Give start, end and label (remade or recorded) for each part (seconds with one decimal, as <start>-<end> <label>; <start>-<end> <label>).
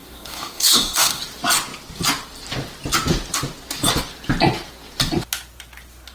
0.0-1.2 remade; 1.2-6.1 recorded